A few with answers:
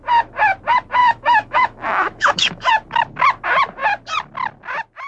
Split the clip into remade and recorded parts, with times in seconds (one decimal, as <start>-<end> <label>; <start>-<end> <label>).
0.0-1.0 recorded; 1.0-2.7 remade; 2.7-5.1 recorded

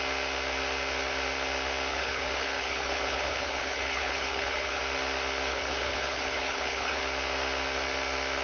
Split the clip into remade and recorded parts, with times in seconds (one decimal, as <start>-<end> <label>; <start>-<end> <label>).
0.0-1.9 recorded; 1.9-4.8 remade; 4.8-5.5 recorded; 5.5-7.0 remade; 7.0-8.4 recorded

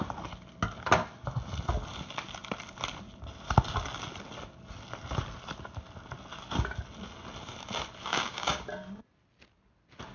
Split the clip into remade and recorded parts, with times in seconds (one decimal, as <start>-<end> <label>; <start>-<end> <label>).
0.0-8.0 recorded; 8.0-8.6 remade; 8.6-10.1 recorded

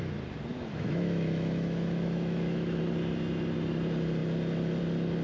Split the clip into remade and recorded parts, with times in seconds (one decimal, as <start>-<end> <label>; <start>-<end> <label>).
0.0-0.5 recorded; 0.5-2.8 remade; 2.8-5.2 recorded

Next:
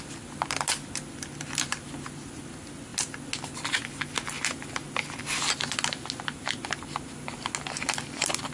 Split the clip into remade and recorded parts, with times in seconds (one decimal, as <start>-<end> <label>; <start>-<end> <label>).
0.0-8.5 recorded

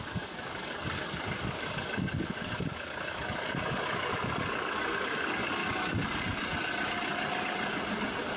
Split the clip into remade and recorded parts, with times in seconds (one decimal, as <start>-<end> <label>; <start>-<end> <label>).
0.0-5.6 remade; 5.6-8.4 recorded

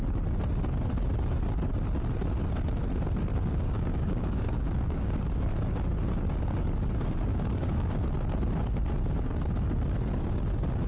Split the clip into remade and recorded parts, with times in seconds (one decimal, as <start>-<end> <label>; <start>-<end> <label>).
0.0-3.3 recorded; 3.3-5.5 remade; 5.5-7.3 recorded; 7.3-7.9 remade; 7.9-10.9 recorded

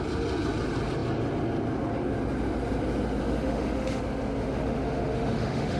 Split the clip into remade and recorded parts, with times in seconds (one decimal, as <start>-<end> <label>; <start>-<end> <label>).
0.0-3.2 recorded; 3.2-4.0 remade; 4.0-4.4 recorded; 4.4-5.8 remade